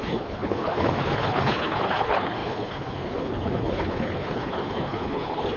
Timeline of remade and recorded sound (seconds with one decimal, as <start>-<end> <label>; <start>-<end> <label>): 0.0-5.6 remade